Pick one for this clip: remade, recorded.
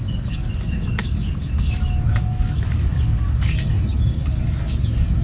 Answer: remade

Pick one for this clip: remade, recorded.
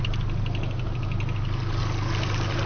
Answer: recorded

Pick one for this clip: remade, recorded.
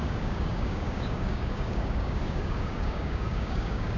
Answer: remade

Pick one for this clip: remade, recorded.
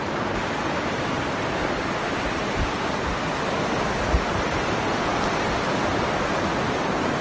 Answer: recorded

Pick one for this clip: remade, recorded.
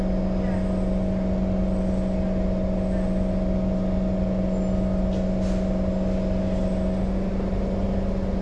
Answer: recorded